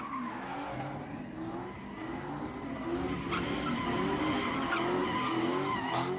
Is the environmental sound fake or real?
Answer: real